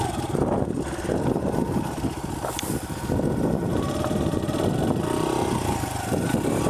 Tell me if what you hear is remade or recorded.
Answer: recorded